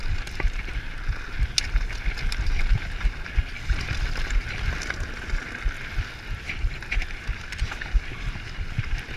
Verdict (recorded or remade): recorded